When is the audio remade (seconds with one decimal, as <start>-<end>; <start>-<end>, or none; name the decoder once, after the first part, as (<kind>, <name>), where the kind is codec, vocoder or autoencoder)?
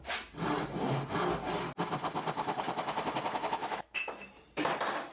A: 3.6-4.1 (autoencoder, DAC-VAE)